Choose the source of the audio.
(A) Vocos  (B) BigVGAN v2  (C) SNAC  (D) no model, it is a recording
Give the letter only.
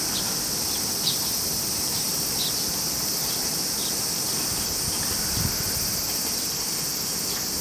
B